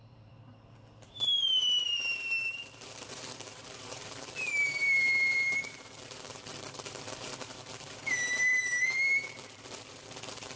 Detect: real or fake fake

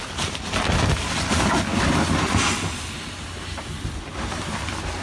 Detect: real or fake real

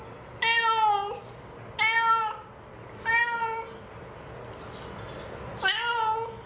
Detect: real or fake real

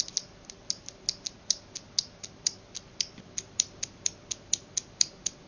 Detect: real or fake real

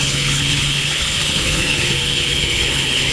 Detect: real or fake fake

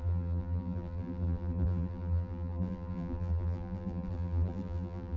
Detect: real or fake fake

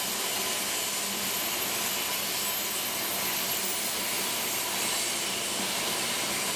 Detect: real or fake real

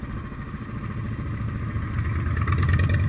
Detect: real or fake real